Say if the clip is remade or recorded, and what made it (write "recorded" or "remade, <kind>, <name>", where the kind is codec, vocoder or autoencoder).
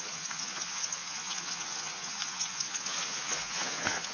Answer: remade, vocoder, Vocos